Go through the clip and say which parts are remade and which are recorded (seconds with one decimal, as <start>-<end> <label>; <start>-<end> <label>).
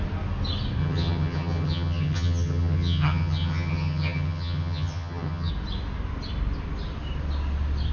0.0-0.8 recorded; 0.8-5.5 remade; 5.5-7.9 recorded